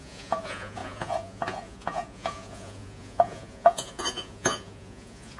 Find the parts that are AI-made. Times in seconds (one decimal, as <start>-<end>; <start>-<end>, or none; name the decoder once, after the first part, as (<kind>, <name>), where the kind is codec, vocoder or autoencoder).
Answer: 0.0-5.4 (vocoder, Vocos)